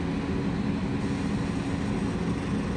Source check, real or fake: real